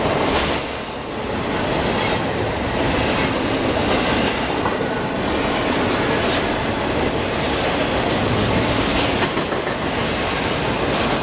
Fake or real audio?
real